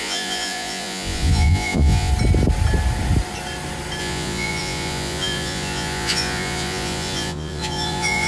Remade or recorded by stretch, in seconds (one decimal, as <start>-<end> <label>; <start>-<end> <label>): 0.0-2.1 remade; 2.1-4.0 recorded; 4.0-8.3 remade